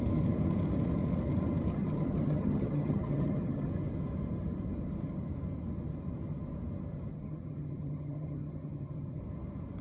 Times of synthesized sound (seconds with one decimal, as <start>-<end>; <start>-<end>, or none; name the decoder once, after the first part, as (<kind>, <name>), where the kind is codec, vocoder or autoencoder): 1.7-3.7 (vocoder, HiFi-GAN); 7.1-9.2